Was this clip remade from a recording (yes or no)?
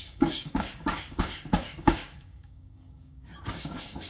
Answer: yes